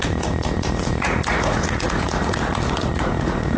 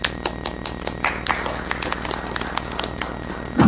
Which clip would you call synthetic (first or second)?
first